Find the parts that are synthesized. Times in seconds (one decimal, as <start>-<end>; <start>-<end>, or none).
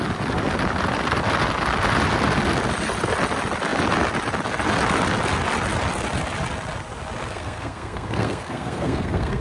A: 7.2-9.4